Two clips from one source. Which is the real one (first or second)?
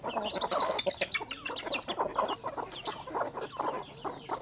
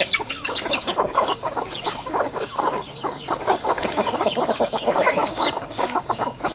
first